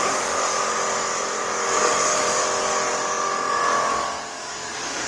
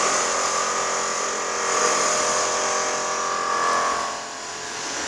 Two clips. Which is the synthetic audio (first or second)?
first